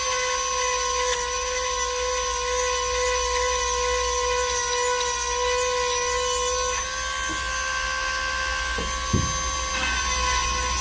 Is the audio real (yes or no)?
yes